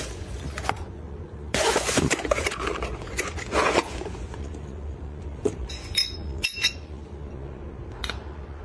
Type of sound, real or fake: fake